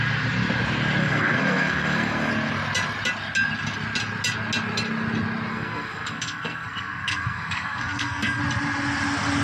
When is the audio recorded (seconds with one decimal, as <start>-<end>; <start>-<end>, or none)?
0.0-1.0; 2.3-5.5; 8.4-9.4